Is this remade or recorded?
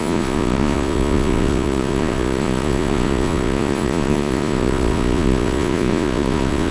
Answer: remade